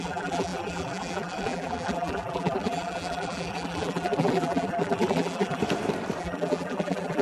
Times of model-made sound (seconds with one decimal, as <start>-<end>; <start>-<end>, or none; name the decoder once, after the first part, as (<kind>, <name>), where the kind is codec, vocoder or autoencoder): 0.0-5.6 (vocoder, BigVGAN v2); 6.2-7.2